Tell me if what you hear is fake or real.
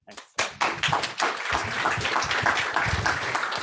real